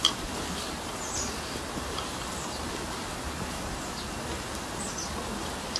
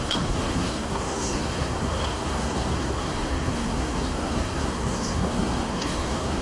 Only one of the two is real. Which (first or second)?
first